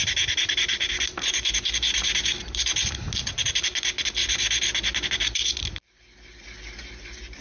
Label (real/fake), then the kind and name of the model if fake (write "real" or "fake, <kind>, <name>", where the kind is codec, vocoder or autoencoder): real